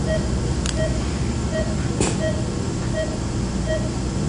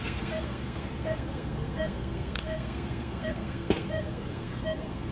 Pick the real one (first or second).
first